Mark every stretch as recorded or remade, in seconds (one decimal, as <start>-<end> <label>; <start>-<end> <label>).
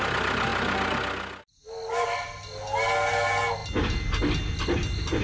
0.0-5.2 recorded